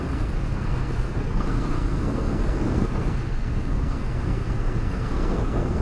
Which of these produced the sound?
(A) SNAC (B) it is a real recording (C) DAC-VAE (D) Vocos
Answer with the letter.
A